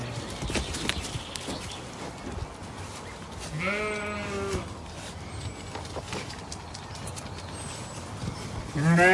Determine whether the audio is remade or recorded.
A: recorded